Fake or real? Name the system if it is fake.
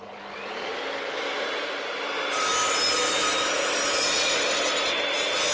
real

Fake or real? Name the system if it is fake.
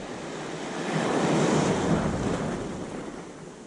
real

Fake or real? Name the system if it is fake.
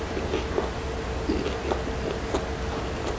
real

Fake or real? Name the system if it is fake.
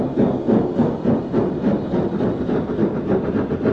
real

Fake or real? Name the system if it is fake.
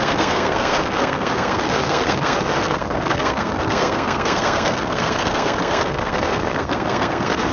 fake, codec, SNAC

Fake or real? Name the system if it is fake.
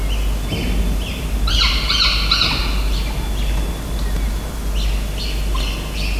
real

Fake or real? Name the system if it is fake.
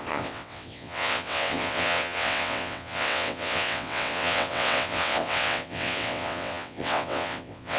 fake, vocoder, WaveNeXt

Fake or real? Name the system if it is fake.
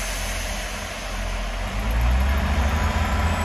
real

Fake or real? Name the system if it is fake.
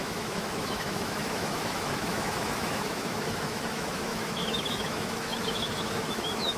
fake, autoencoder, DAC-VAE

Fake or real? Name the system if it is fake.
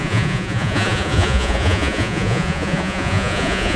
fake, vocoder, Vocos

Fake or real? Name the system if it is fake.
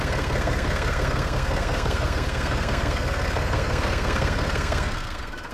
fake, codec, SNAC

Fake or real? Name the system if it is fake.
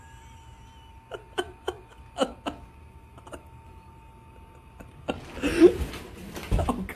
real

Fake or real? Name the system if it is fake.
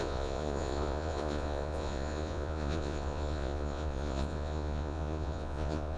fake, vocoder, Vocos